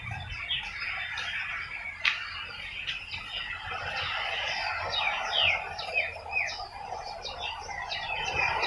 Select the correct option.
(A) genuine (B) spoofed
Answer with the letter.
A